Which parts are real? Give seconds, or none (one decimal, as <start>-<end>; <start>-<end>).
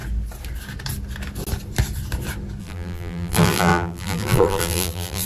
0.0-2.6